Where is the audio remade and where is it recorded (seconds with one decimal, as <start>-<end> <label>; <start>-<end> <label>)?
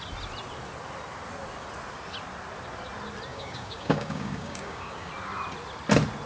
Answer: 0.0-3.3 recorded; 3.3-5.1 remade; 5.1-6.3 recorded